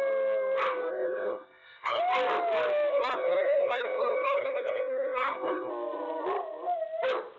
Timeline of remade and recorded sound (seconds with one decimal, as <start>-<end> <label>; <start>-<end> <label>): 0.0-0.9 recorded; 0.9-2.0 remade; 2.0-2.9 recorded; 2.9-5.7 remade; 5.7-7.4 recorded